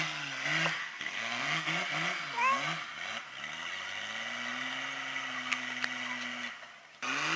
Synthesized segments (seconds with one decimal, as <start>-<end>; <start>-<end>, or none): 0.8-1.7